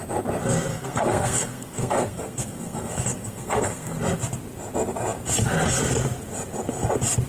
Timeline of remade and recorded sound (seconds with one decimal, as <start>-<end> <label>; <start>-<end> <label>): 0.0-0.7 recorded; 0.7-4.0 remade; 4.0-7.3 recorded